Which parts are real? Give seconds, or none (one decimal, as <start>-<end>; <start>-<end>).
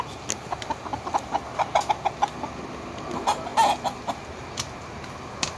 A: 0.0-5.6